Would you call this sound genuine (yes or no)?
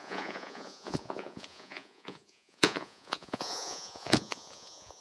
no